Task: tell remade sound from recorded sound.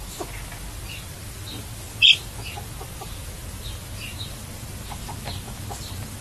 recorded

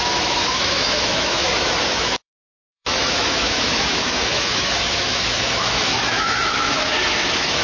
remade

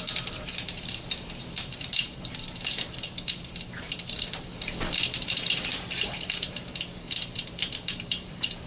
remade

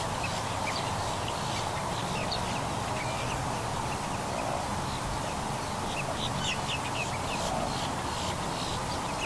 recorded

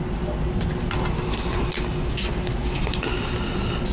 recorded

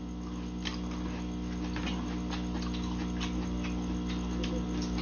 recorded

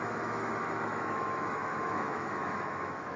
remade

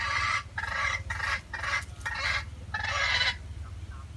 recorded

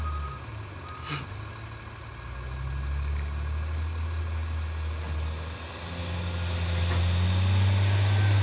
recorded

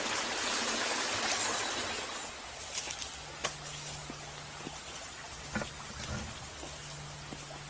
recorded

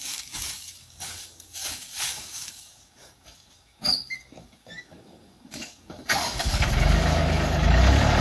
remade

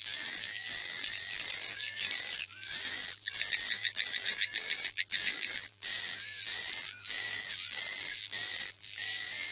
remade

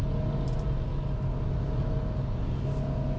recorded